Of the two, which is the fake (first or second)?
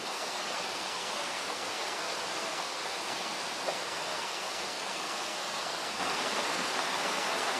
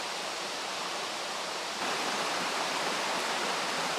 first